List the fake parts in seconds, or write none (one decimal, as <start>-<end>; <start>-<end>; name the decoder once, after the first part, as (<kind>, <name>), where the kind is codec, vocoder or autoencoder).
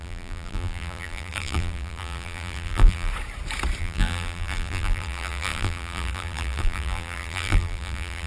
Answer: 0.0-3.1 (vocoder, BigVGAN v2); 3.8-8.3